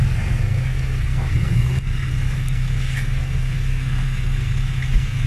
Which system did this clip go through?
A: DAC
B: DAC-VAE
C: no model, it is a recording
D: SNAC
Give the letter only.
D